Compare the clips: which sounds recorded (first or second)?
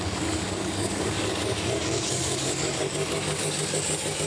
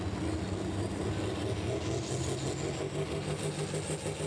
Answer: second